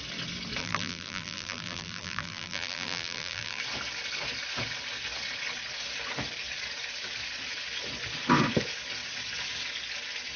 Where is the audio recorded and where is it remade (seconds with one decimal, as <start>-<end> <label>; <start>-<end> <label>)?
0.0-0.6 recorded; 0.6-3.6 remade; 3.6-10.4 recorded